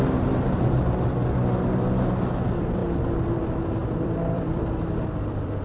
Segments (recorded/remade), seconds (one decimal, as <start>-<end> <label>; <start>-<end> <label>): 0.0-3.8 recorded; 3.8-5.6 remade